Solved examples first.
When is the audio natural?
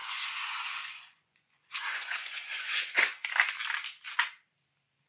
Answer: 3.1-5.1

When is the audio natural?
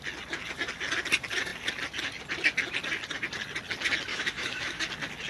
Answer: 0.0-4.1; 4.8-5.3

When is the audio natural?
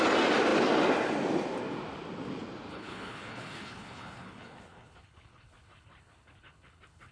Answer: 0.0-2.7